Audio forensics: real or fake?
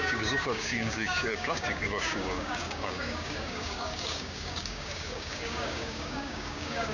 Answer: fake